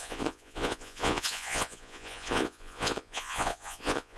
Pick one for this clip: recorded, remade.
remade